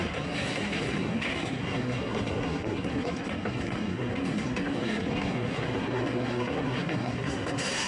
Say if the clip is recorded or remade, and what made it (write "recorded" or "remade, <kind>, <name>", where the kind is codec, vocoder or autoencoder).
remade, codec, SNAC